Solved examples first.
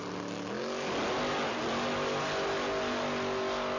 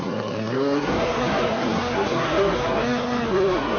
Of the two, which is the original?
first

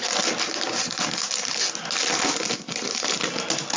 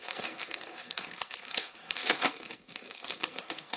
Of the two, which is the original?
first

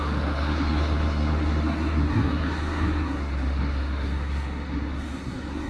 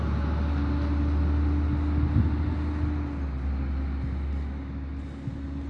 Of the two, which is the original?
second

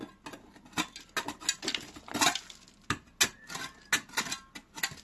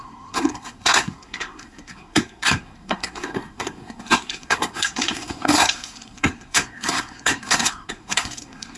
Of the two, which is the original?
first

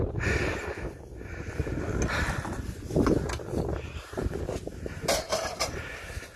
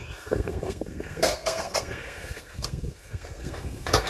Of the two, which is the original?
first